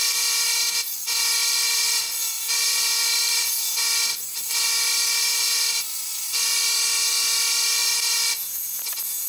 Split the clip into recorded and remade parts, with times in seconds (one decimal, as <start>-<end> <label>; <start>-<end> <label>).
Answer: 0.0-9.3 recorded